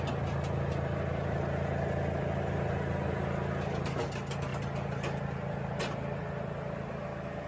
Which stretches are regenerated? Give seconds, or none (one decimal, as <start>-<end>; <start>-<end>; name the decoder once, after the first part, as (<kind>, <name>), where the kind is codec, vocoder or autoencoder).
none